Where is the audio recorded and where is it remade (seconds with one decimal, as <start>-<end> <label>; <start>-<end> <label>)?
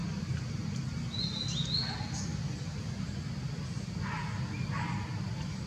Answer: 0.0-0.7 remade; 0.7-5.7 recorded